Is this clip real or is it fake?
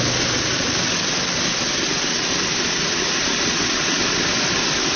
real